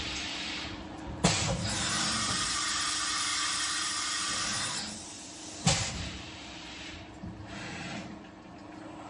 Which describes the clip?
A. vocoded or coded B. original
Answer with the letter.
A